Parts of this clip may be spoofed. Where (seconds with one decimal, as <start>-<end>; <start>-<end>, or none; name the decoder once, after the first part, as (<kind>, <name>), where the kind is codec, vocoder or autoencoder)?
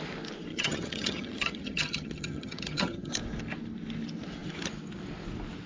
0.5-3.1 (vocoder, HiFi-GAN)